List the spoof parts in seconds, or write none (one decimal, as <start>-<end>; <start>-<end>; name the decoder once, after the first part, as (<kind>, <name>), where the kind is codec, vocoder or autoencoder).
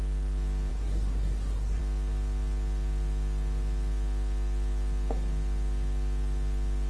0.7-1.8 (codec, SNAC)